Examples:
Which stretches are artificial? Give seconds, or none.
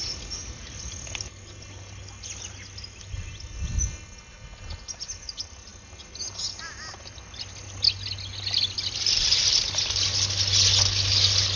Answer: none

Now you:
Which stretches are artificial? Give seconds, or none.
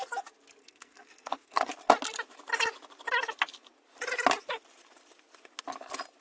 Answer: 0.6-1.7 (codec, SNAC)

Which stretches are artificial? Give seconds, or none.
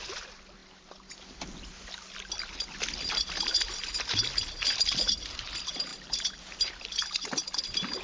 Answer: none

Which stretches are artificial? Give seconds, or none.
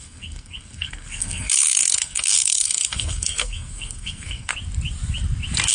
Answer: 0.0-4.5 (codec, SNAC)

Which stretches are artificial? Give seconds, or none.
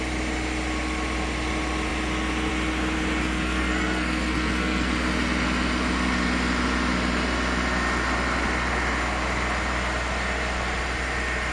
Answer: 3.2-4.9 (codec, SNAC)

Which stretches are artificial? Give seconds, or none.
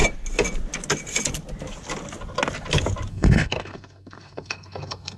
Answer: 3.1-5.2 (codec, SNAC)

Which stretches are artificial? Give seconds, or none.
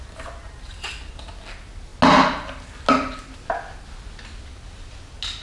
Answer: none